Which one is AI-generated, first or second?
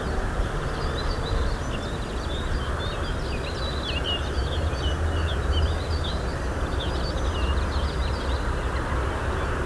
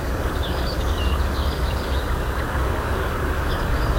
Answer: second